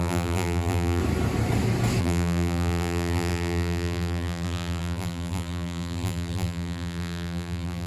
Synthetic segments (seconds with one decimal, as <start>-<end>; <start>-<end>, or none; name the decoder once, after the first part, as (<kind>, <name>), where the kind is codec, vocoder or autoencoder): 0.0-1.0 (vocoder, BigVGAN v2); 2.0-7.9